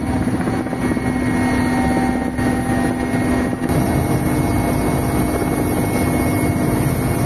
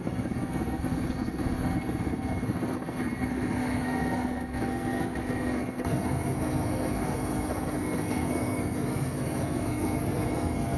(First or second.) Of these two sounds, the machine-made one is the second